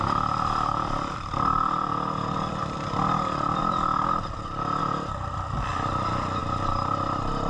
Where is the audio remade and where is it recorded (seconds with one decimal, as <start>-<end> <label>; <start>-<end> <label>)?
0.0-3.6 remade; 3.6-4.8 recorded; 4.8-6.4 remade; 6.4-7.5 recorded

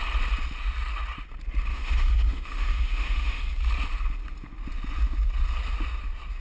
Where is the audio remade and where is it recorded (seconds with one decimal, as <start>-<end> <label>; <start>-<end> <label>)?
0.0-1.7 recorded; 1.7-3.4 remade; 3.4-6.4 recorded